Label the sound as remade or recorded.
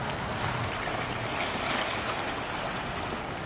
recorded